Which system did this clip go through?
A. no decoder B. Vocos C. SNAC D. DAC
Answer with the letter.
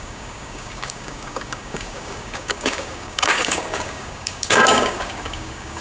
D